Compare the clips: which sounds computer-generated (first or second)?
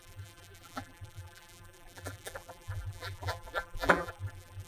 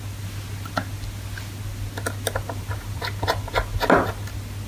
first